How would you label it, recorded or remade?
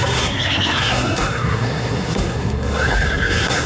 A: remade